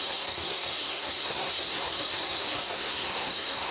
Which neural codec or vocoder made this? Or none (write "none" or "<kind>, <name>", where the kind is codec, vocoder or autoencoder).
codec, SNAC